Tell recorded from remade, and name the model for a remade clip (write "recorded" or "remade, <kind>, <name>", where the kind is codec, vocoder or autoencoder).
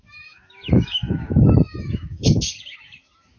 remade, autoencoder, DAC-VAE